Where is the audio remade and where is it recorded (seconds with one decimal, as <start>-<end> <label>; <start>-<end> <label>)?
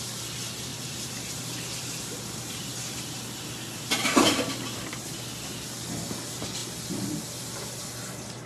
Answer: 0.0-0.7 recorded; 0.7-4.5 remade; 4.5-8.5 recorded